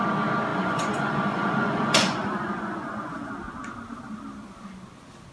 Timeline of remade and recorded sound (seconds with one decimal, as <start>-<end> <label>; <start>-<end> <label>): 0.0-0.5 recorded; 0.5-3.3 remade; 3.3-5.3 recorded